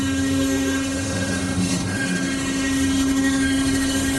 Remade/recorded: remade